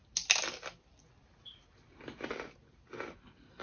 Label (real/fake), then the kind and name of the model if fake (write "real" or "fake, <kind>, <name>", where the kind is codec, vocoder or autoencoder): real